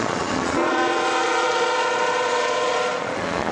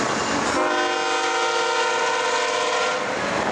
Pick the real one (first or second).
second